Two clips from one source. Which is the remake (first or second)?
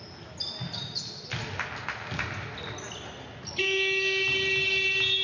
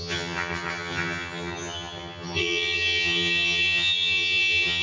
second